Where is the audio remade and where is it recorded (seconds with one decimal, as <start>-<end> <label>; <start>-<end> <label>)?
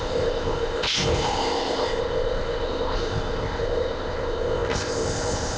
0.0-5.6 remade